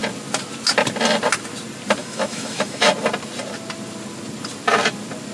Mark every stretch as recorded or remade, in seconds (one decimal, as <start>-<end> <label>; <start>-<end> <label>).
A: 0.0-2.0 recorded; 2.0-2.9 remade; 2.9-5.3 recorded